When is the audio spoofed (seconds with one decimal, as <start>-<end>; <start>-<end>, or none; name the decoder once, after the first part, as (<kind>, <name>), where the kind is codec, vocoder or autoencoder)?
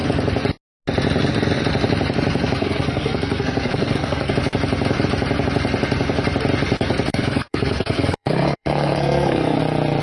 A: 2.6-4.3 (codec, SNAC); 7.1-9.6